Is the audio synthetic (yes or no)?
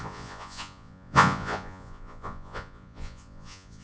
yes